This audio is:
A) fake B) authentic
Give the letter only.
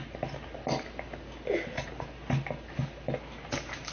B